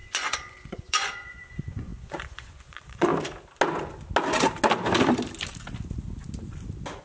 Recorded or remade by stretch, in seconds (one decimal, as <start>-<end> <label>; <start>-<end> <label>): 0.0-3.1 remade; 3.1-7.0 recorded